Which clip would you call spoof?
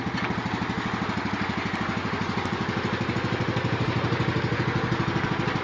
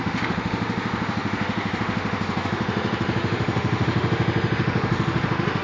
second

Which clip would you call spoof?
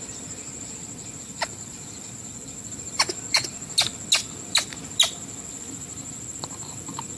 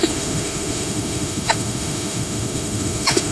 second